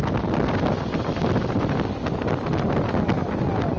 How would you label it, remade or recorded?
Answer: recorded